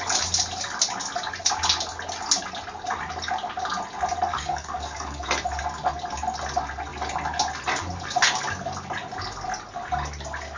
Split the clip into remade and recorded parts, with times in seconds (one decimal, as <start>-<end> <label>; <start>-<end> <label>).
0.0-4.3 recorded; 4.3-5.6 remade; 5.6-10.6 recorded